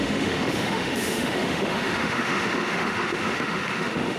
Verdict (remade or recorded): remade